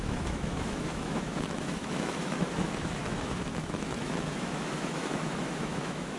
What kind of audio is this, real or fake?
fake